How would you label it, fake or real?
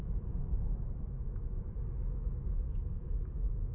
fake